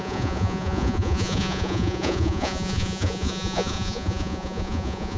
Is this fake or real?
fake